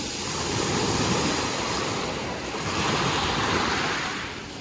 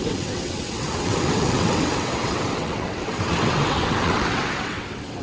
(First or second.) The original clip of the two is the first